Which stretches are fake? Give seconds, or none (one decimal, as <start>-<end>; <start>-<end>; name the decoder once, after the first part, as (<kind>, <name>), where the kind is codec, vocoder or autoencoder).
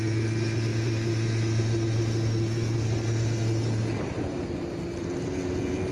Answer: none